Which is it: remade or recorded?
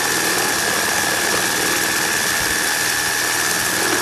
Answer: recorded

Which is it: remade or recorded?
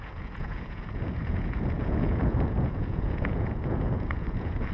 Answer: remade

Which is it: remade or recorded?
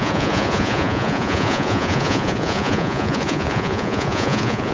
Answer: remade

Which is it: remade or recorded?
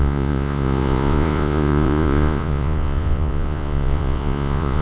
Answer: remade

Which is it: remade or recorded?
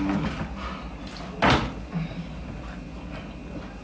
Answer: recorded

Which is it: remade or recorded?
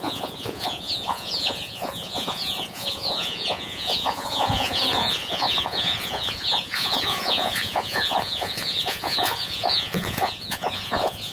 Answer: remade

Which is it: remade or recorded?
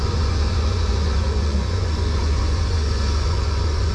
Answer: remade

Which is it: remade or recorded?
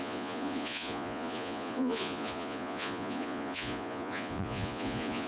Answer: remade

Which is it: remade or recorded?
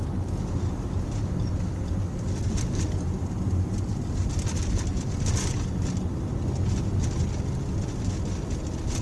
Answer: recorded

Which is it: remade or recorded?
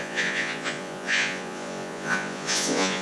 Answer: remade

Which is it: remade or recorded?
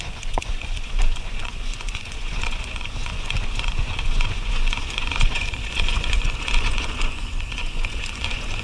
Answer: remade